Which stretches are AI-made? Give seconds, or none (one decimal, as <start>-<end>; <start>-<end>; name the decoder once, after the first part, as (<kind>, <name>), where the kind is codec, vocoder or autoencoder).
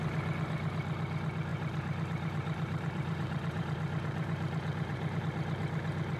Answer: 1.5-5.2 (vocoder, BigVGAN v2)